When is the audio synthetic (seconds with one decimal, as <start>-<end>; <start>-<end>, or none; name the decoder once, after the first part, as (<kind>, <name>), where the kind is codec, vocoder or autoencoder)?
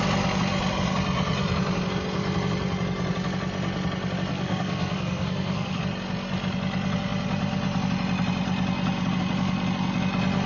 4.3-5.8 (codec, SNAC)